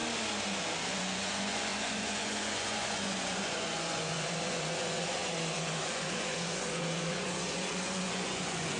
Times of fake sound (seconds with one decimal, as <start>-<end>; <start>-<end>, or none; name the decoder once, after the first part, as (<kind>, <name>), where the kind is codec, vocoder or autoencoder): 0.9-8.8 (vocoder, Vocos)